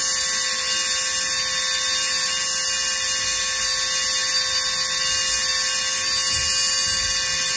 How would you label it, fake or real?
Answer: real